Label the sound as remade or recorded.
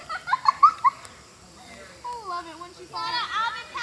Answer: recorded